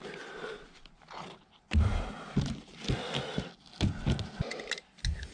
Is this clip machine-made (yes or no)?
no